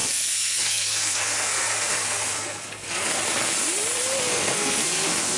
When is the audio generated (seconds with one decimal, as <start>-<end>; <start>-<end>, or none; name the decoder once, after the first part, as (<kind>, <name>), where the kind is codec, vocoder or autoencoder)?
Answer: 0.0-3.2 (codec, SNAC); 4.3-5.4